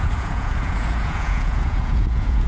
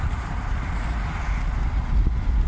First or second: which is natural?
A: second